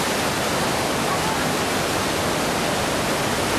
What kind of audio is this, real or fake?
real